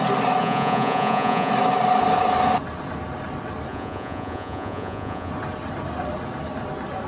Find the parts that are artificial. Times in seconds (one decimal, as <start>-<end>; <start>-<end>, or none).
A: 0.4-1.5; 3.7-5.3